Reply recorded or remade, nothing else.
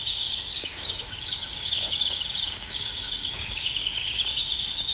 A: remade